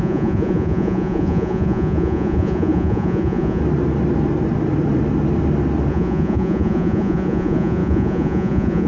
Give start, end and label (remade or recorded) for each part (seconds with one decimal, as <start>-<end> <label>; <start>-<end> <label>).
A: 0.0-3.6 remade; 3.6-5.9 recorded; 5.9-8.9 remade